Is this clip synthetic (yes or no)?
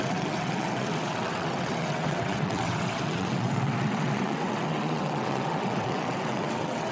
yes